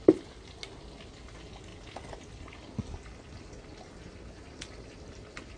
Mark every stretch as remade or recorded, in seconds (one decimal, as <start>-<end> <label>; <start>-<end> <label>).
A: 0.0-5.6 recorded